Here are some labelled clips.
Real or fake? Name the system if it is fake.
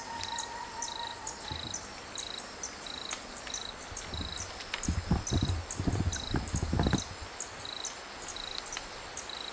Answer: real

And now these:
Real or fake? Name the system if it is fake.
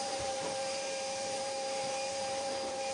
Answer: fake, vocoder, BigVGAN v2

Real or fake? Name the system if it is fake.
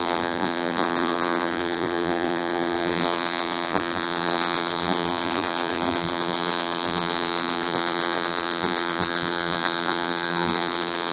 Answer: fake, vocoder, BigVGAN v2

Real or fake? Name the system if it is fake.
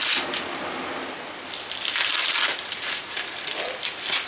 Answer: fake, vocoder, BigVGAN v2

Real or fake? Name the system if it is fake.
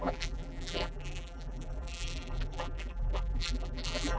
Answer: fake, vocoder, BigVGAN v2